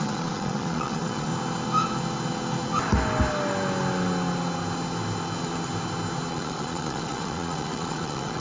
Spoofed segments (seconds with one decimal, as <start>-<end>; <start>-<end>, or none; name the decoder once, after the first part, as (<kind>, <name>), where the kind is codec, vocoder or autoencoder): 0.0-1.3 (vocoder, Vocos); 6.3-8.4